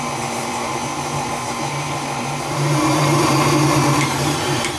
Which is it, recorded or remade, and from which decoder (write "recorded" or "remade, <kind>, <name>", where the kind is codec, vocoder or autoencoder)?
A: remade, vocoder, BigVGAN v2